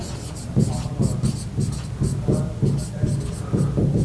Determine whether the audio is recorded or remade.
recorded